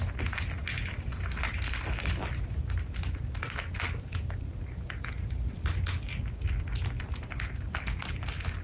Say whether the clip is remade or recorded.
recorded